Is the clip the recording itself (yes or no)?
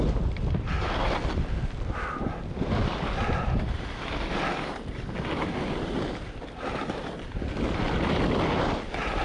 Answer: yes